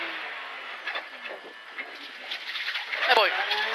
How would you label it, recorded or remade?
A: recorded